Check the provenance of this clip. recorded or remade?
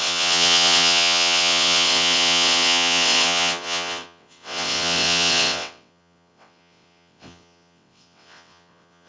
remade